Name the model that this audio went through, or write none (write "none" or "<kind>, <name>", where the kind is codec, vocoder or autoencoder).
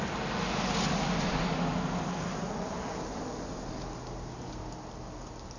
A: none